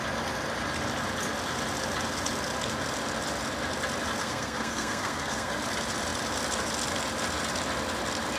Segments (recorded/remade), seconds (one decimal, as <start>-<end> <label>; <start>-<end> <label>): 0.0-4.2 recorded; 4.2-5.5 remade; 5.5-8.4 recorded